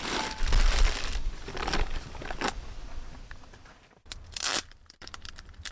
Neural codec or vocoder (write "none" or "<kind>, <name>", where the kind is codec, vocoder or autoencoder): vocoder, BigVGAN v2